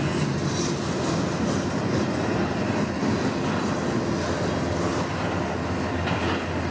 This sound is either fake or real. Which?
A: real